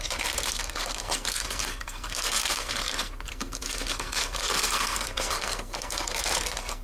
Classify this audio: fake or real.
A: fake